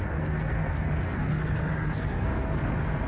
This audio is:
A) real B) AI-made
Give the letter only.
B